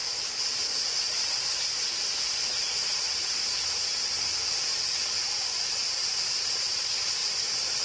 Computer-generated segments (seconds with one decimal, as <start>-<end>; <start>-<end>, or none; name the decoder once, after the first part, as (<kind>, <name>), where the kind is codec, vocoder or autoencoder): 1.4-5.8 (vocoder, BigVGAN v2); 6.8-7.8